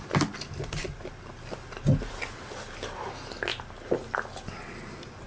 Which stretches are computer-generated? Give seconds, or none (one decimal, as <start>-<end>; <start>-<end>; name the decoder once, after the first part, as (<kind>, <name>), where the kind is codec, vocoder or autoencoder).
none